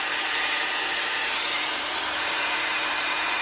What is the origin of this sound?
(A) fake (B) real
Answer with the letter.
A